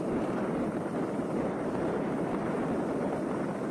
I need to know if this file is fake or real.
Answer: fake